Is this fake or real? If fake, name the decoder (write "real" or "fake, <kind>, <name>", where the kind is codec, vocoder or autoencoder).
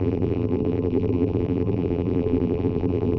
fake, vocoder, BigVGAN v2